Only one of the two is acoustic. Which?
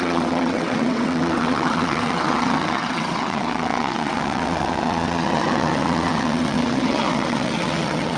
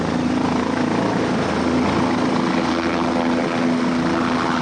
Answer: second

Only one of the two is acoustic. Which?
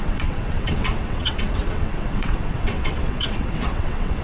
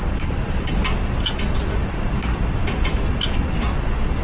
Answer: second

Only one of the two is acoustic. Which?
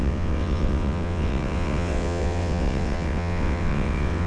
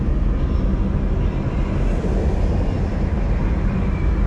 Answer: second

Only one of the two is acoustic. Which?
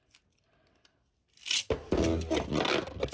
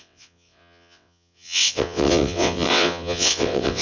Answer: first